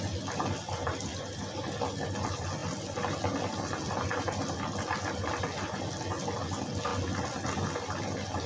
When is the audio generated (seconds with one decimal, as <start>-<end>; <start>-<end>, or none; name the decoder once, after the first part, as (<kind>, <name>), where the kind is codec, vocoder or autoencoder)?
none